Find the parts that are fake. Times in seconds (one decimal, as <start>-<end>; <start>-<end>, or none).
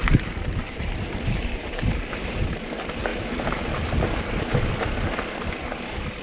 0.0-2.6